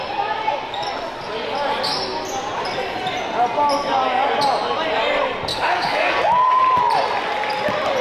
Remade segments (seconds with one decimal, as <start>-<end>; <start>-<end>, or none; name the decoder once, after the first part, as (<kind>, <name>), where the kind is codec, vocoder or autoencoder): 5.5-6.6 (codec, DAC)